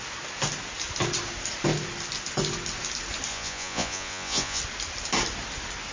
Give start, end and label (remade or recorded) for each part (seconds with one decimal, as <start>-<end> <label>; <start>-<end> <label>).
0.0-3.3 recorded; 3.3-4.6 remade; 4.6-5.9 recorded